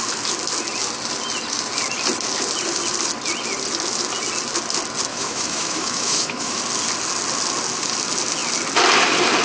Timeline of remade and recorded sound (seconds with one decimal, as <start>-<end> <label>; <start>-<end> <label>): 0.0-5.1 recorded; 5.1-6.6 remade; 6.6-9.4 recorded